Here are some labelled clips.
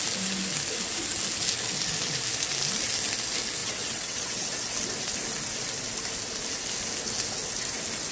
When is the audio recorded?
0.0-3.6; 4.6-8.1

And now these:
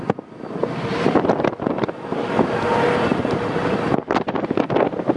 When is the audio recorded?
0.0-0.6; 1.3-3.1; 3.7-5.2